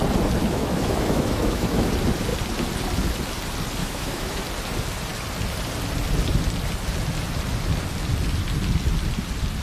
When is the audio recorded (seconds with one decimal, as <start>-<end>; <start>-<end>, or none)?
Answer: 0.0-0.4; 1.9-3.8; 4.4-9.6